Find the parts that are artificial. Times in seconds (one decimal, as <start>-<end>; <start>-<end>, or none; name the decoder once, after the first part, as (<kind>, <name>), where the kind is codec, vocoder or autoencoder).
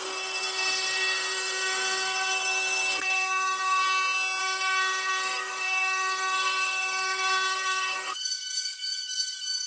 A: 0.0-3.8 (codec, SNAC); 4.4-9.7